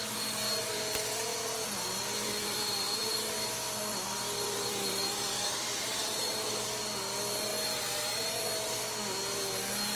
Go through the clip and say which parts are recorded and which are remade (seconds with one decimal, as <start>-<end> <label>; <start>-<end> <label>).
0.0-1.3 recorded; 1.3-3.2 remade; 3.2-3.9 recorded; 3.9-6.8 remade; 6.8-10.0 recorded